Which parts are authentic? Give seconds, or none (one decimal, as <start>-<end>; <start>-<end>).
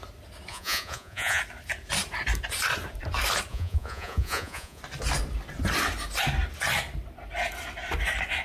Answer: 0.0-0.5; 1.4-3.5; 4.8-8.4